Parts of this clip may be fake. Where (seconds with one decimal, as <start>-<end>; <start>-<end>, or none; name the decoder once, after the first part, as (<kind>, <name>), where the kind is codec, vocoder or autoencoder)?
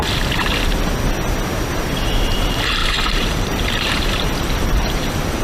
2.8-5.4 (vocoder, BigVGAN v2)